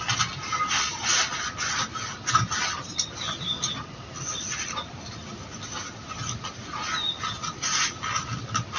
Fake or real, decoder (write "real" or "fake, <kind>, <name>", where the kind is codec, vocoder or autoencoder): real